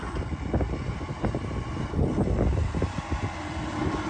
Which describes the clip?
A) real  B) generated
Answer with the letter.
A